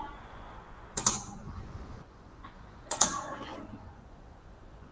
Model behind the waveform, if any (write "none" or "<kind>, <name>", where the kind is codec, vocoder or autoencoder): vocoder, Vocos